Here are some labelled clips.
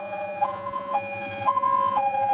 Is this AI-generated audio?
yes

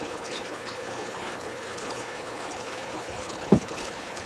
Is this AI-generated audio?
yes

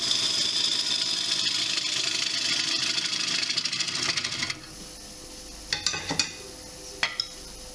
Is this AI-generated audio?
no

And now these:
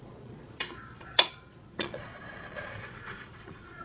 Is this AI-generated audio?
yes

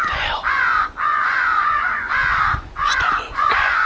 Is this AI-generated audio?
yes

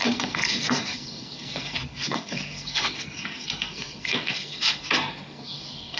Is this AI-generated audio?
yes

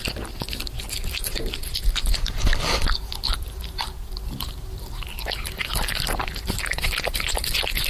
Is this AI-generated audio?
no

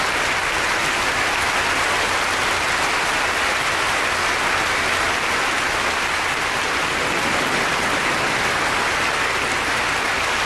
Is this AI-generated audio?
no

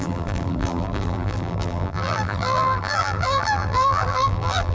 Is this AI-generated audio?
yes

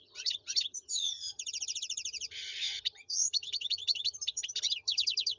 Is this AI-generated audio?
yes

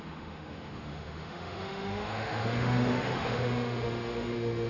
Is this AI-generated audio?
yes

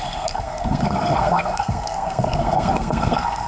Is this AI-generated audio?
yes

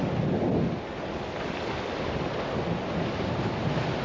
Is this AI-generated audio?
no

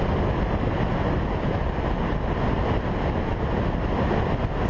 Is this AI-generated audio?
no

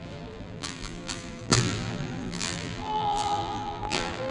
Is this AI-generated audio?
yes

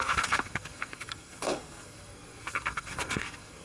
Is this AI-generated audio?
yes